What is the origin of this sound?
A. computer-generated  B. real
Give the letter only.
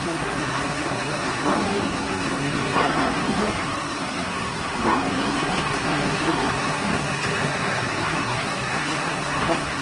A